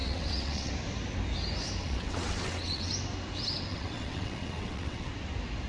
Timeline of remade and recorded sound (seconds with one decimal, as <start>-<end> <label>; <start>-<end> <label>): 0.0-0.7 remade; 0.7-1.8 recorded; 1.8-2.9 remade; 2.9-3.7 recorded; 3.7-5.1 remade; 5.1-5.7 recorded